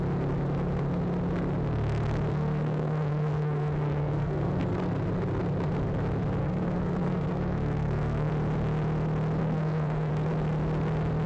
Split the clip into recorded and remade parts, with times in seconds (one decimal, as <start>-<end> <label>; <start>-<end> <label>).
0.0-2.3 recorded; 2.3-5.0 remade; 5.0-6.4 recorded; 6.4-8.3 remade; 8.3-9.4 recorded; 9.4-10.1 remade; 10.1-11.3 recorded

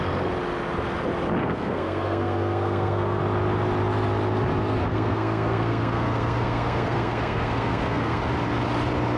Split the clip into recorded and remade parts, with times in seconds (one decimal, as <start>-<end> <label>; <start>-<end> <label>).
0.0-1.4 recorded; 1.4-3.2 remade; 3.2-4.8 recorded; 4.8-8.2 remade; 8.2-9.2 recorded

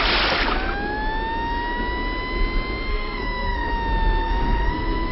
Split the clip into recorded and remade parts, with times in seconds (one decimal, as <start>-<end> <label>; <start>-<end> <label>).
0.0-2.9 recorded; 2.9-3.7 remade; 3.7-4.2 recorded; 4.2-5.1 remade

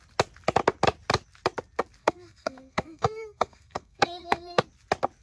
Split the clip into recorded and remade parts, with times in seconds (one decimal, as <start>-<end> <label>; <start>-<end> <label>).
0.0-2.0 recorded; 2.0-4.6 remade; 4.6-5.2 recorded

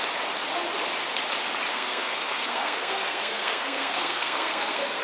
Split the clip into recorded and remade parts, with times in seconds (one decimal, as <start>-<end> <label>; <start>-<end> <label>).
0.0-1.7 recorded; 1.7-5.0 remade